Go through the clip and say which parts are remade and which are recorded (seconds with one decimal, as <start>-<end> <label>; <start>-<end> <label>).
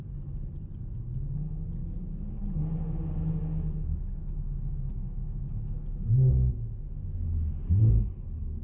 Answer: 0.0-4.2 recorded; 4.2-5.4 remade; 5.4-8.6 recorded